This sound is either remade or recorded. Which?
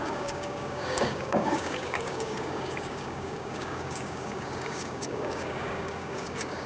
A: remade